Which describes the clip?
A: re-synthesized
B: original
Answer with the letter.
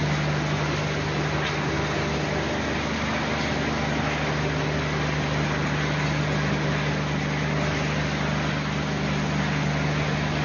B